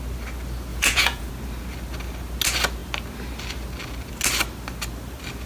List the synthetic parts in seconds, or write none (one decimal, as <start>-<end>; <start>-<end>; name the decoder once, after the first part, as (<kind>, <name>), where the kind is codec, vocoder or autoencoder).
0.7-1.3 (vocoder, Vocos)